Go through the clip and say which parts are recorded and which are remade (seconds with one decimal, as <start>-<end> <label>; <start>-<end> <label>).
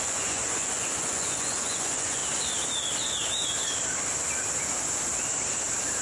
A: 0.0-2.2 remade; 2.2-6.0 recorded